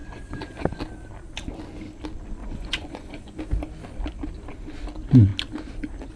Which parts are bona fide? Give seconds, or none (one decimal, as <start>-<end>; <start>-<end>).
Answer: 0.8-2.4; 3.4-6.2